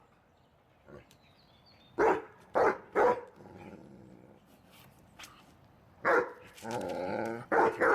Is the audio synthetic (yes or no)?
no